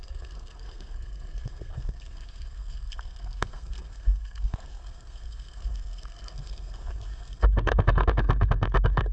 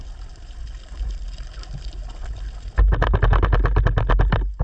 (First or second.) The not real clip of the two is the first